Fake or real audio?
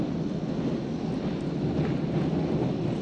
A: real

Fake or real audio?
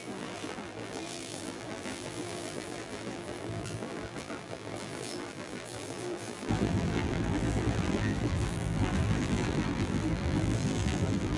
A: fake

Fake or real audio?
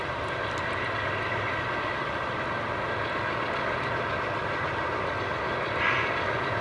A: real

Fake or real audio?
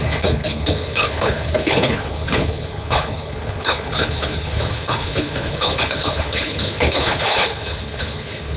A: fake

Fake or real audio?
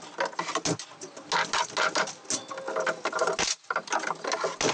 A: real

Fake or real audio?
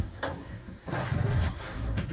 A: fake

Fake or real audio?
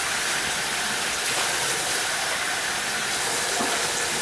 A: real